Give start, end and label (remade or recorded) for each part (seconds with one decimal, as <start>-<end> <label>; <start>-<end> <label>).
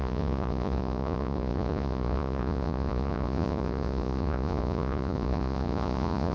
0.0-6.3 remade